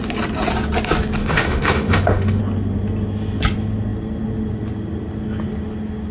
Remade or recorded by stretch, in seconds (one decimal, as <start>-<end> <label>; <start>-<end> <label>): 0.0-1.2 recorded; 1.2-2.4 remade; 2.4-6.1 recorded